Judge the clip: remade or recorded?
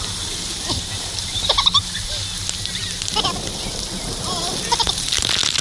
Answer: recorded